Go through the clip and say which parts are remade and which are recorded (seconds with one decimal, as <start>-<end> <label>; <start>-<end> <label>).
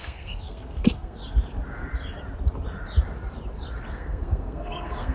0.0-1.2 remade; 1.2-3.9 recorded; 3.9-5.1 remade